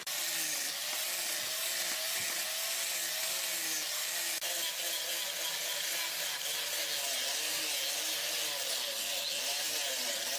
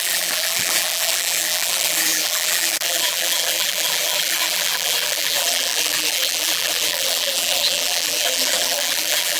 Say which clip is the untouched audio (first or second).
first